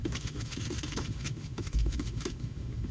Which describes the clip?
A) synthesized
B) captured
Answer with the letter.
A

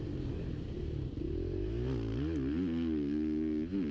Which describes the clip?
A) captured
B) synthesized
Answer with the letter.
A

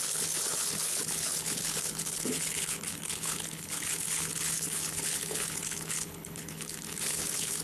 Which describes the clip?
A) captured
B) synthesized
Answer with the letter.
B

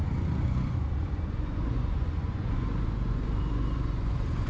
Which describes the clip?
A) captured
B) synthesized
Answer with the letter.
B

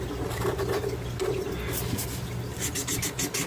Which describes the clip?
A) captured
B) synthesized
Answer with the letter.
A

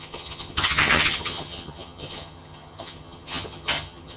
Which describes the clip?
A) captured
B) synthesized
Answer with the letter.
B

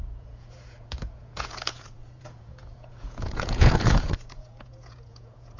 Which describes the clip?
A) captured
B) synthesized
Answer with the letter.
B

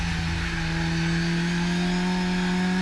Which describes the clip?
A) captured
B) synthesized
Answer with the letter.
A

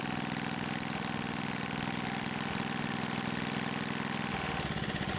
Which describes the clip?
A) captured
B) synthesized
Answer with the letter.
A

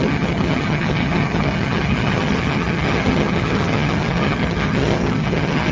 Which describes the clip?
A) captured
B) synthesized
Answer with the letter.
B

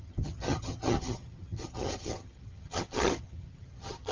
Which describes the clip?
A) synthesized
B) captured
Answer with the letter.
A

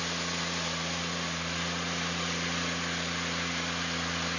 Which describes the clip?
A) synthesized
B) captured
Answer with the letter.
B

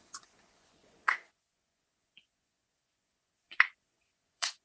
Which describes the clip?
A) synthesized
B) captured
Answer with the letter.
A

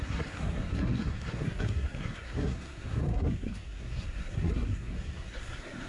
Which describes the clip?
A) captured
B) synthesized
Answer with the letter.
B